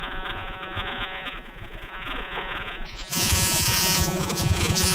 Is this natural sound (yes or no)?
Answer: no